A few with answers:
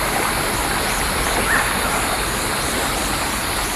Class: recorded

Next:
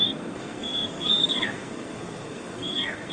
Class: remade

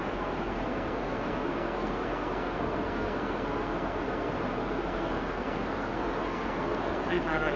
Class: remade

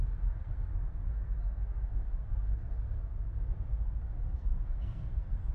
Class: remade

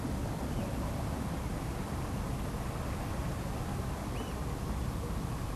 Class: recorded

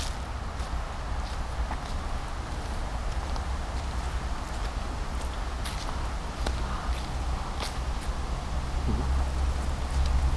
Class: recorded